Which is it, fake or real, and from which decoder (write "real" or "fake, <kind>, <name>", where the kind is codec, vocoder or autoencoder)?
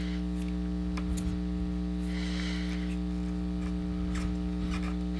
real